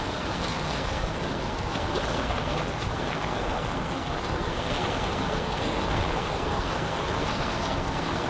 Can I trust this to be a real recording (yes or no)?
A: no